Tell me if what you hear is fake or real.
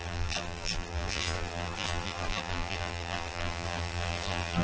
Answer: fake